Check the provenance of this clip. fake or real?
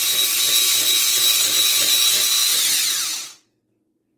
real